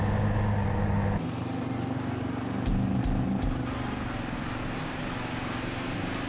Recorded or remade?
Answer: recorded